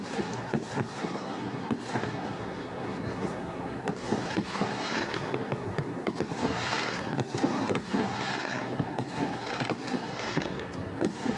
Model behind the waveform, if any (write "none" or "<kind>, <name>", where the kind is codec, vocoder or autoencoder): codec, SNAC